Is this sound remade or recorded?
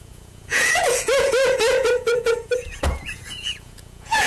remade